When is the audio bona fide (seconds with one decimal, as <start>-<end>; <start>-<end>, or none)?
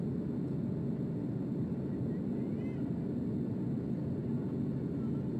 0.0-5.4